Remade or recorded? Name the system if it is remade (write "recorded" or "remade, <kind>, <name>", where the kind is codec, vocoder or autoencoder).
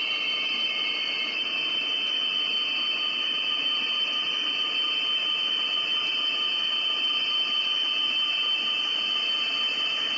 recorded